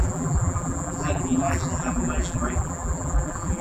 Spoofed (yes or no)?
yes